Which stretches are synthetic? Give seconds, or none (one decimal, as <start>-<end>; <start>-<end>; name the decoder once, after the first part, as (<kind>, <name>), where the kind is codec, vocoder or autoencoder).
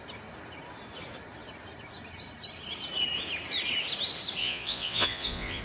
4.4-5.6 (vocoder, Vocos)